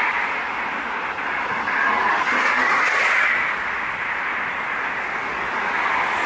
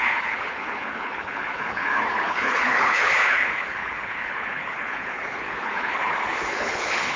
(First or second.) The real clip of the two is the first